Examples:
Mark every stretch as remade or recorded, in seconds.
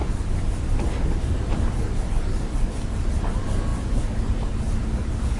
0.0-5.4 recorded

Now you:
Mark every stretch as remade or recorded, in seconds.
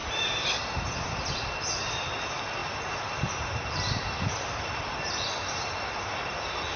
0.0-1.3 remade; 1.3-2.6 recorded; 2.6-6.8 remade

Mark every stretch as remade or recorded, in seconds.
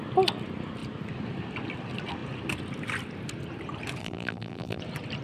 0.0-4.0 recorded; 4.0-4.8 remade; 4.8-5.2 recorded